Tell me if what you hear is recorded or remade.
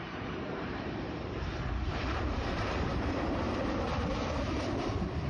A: remade